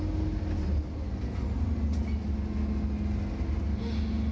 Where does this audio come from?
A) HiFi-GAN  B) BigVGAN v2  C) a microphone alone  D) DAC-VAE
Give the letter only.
C